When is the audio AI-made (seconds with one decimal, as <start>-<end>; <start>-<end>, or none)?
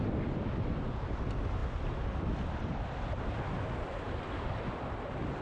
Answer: none